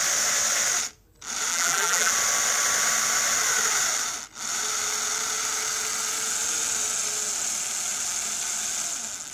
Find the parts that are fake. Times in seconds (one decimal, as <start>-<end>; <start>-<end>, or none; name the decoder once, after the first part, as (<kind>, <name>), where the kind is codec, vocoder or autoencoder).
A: 1.5-2.1 (vocoder, BigVGAN v2)